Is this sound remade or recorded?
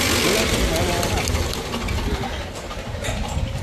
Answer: recorded